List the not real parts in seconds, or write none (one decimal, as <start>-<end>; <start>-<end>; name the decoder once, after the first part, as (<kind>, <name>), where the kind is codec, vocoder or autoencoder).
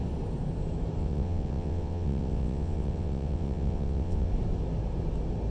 1.0-4.3 (vocoder, WaveNeXt)